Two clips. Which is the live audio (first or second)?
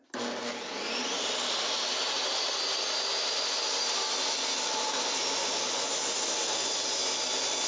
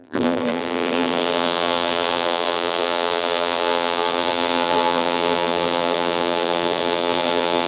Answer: first